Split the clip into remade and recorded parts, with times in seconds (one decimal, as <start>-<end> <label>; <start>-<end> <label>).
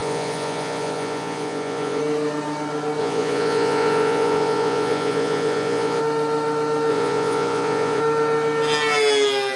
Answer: 0.0-2.0 remade; 2.0-3.0 recorded; 3.0-6.0 remade; 6.0-6.9 recorded; 6.9-8.0 remade; 8.0-9.6 recorded